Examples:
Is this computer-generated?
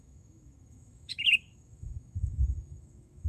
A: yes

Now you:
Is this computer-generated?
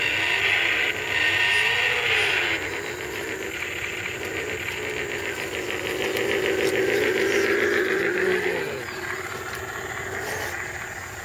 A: no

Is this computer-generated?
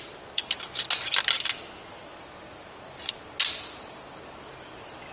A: no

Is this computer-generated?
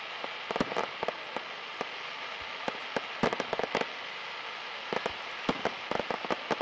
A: no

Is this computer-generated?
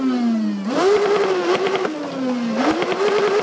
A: no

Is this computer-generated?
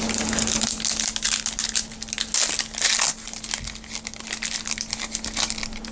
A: no